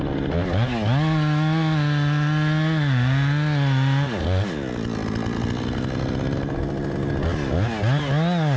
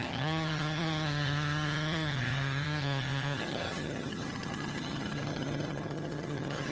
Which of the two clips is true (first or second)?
first